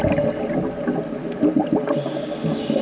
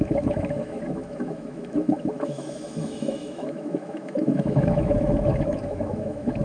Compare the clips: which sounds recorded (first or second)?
first